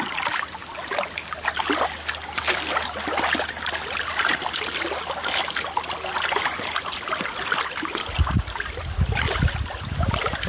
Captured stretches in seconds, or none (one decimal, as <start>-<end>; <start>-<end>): 0.0-10.5